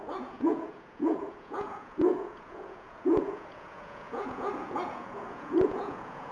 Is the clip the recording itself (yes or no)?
no